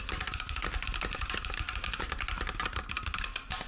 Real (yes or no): yes